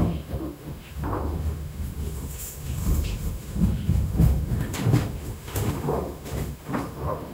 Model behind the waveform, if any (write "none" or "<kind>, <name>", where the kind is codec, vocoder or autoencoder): autoencoder, DAC-VAE